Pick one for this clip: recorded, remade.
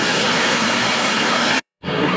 remade